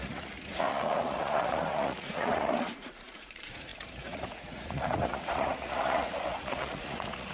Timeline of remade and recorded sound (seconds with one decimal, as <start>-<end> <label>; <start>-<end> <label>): 0.0-7.3 remade